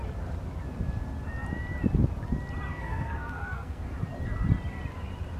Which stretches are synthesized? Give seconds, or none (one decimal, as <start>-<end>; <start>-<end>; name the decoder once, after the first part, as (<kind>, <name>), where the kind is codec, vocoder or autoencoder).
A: 2.7-3.8 (codec, SNAC)